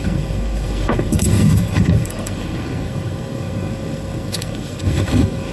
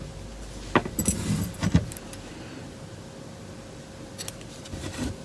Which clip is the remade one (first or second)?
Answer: first